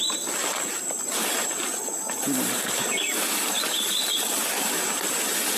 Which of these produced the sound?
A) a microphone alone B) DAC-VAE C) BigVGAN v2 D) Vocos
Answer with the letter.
A